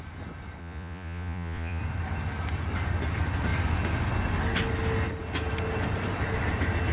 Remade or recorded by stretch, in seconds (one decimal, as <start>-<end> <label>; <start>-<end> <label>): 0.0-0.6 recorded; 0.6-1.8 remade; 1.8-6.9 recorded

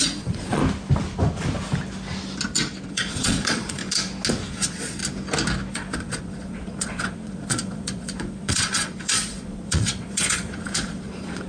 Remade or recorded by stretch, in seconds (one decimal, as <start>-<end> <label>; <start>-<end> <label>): 0.0-0.6 remade; 0.6-2.9 recorded; 2.9-3.8 remade; 3.8-4.5 recorded; 4.5-5.0 remade; 5.0-5.7 recorded; 5.7-11.5 remade

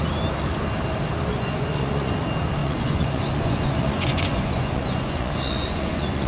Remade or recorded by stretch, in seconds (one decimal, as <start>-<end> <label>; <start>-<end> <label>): 0.0-1.3 recorded; 1.3-2.1 remade; 2.1-2.6 recorded; 2.6-6.3 remade

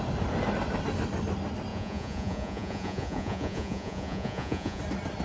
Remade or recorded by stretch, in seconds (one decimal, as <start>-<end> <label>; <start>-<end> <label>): 0.0-1.7 recorded; 1.7-4.8 remade; 4.8-5.2 recorded

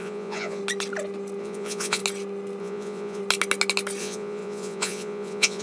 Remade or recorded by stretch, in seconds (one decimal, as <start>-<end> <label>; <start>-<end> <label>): 0.0-0.6 remade; 0.6-1.4 recorded; 1.4-2.0 remade; 2.0-2.6 recorded; 2.6-3.2 remade; 3.2-4.0 recorded; 4.0-5.6 remade

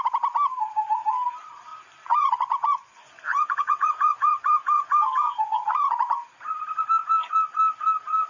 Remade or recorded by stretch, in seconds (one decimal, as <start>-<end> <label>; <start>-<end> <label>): 0.0-1.7 recorded; 1.7-6.3 remade; 6.3-8.3 recorded

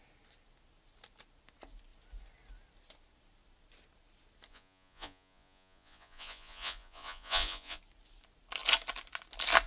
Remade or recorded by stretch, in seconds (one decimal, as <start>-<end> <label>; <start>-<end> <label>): 0.0-4.5 recorded; 4.5-7.8 remade; 7.8-9.7 recorded